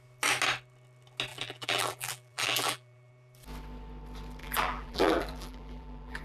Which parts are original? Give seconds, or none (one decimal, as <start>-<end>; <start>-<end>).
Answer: 0.0-1.3; 3.1-4.4